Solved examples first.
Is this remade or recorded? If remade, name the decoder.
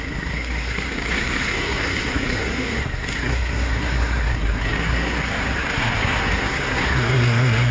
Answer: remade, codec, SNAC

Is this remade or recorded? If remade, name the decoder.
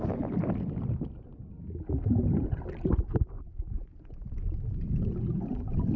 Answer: recorded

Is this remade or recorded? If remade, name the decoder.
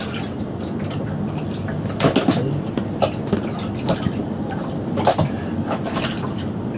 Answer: recorded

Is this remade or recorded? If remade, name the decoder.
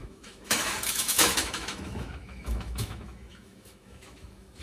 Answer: remade, autoencoder, DAC-VAE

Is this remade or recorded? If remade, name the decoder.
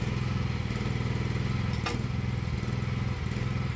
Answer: recorded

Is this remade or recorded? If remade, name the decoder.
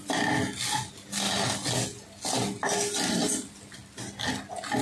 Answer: recorded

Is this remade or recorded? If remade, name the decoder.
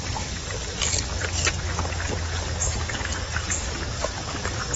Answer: recorded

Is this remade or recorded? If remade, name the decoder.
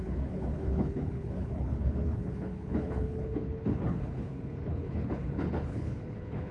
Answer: remade, codec, HILCodec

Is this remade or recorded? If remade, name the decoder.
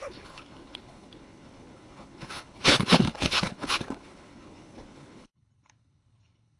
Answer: remade, codec, HILCodec